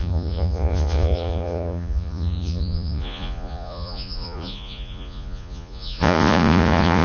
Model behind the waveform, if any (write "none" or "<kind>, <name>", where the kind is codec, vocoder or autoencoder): vocoder, Vocos